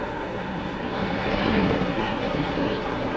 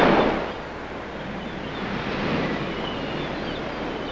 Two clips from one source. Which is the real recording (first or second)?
second